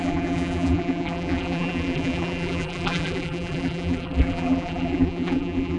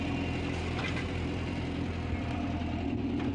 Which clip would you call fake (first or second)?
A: first